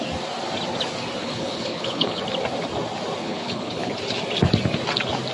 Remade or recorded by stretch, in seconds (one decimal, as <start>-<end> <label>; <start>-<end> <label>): 0.0-1.2 recorded; 1.2-2.2 remade; 2.2-3.2 recorded; 3.2-3.9 remade; 3.9-5.3 recorded